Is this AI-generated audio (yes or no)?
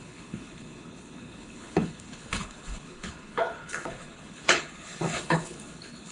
yes